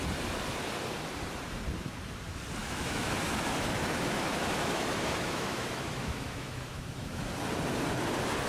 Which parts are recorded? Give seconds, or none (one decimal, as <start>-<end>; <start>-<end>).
0.0-2.6; 7.3-8.5